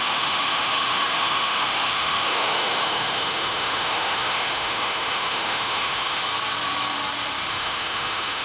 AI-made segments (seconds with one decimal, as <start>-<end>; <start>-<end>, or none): 0.0-6.2; 7.5-8.4